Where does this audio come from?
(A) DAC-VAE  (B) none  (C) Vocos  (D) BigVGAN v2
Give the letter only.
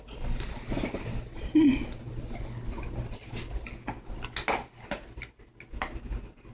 B